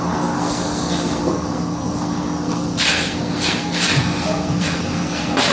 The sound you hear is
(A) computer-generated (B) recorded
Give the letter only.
A